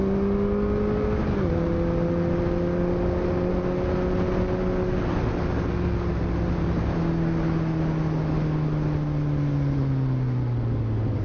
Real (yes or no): yes